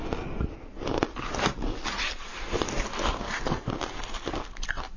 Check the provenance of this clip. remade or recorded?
recorded